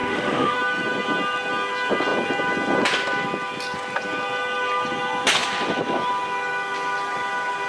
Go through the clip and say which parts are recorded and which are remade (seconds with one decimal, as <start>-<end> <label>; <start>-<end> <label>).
0.0-0.6 remade; 0.6-7.7 recorded